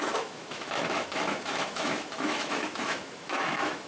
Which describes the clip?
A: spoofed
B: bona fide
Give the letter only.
A